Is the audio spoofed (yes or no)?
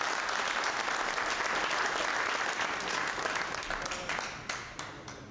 no